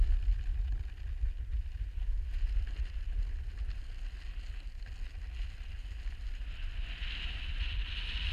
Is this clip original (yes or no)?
yes